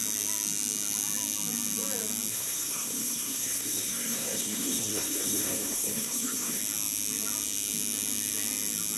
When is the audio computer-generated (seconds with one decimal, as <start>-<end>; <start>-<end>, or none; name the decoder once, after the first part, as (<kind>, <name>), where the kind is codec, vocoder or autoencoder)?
2.3-6.6 (codec, SNAC)